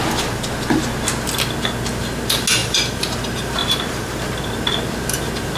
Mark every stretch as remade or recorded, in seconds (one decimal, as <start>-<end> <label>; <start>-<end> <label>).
0.0-2.6 recorded; 2.6-3.2 remade; 3.2-3.6 recorded; 3.6-4.2 remade; 4.2-5.6 recorded